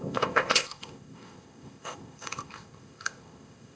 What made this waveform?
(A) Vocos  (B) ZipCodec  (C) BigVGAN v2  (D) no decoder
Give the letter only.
B